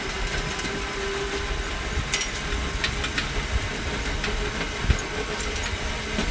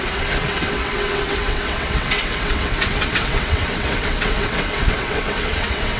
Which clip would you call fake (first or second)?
second